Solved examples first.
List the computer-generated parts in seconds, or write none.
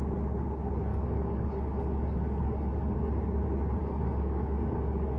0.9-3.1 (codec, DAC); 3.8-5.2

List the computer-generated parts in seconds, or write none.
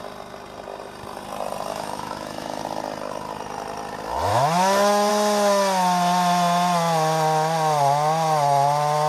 1.7-2.6 (autoencoder, DAC-VAE); 4.3-5.1